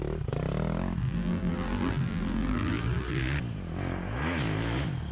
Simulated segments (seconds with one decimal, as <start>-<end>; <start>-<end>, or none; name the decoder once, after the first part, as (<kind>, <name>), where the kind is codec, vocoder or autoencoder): 1.0-3.2 (vocoder, BigVGAN v2)